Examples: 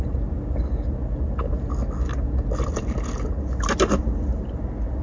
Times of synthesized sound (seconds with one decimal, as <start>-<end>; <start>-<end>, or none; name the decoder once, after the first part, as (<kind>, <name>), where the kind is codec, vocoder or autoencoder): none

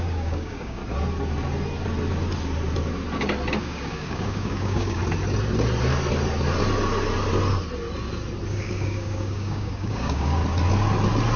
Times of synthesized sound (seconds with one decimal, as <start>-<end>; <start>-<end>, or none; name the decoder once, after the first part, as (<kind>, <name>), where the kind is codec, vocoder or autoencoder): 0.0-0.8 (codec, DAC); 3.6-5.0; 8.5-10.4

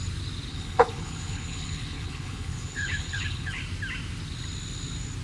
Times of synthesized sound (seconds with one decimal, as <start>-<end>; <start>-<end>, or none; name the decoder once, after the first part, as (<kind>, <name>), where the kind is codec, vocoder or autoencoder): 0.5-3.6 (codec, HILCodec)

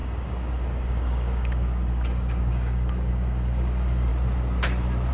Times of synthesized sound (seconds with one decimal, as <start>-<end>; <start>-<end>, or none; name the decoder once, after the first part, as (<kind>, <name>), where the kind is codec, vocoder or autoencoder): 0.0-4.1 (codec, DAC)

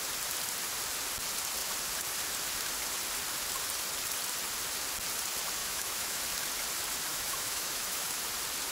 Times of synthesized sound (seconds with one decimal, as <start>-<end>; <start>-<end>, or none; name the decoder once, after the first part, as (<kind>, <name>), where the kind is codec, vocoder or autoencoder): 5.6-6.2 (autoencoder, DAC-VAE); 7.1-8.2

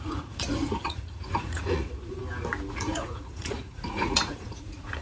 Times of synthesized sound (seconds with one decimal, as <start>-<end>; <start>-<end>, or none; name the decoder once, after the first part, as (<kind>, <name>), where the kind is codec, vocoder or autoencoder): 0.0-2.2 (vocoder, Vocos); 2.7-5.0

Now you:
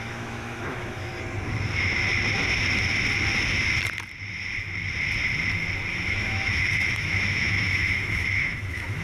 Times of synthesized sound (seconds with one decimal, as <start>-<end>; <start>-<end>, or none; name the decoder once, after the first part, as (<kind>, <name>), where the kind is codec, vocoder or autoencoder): 0.0-1.1 (autoencoder, DAC-VAE); 5.9-9.0

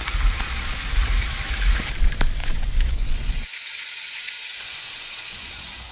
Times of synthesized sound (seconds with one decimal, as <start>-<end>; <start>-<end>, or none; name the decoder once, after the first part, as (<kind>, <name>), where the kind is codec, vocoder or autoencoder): 2.4-5.9 (vocoder, Vocos)